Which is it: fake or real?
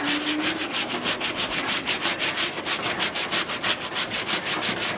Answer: real